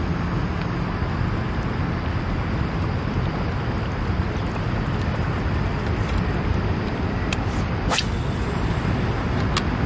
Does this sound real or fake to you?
real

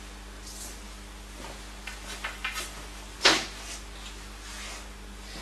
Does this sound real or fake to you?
real